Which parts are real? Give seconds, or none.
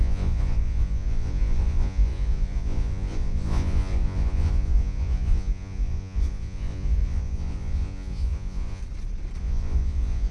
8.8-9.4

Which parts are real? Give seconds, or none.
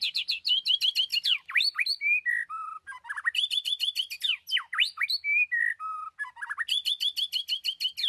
4.3-8.1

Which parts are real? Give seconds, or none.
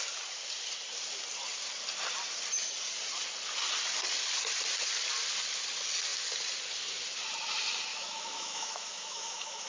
0.0-7.9